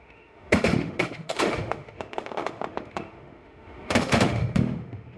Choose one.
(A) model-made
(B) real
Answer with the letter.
A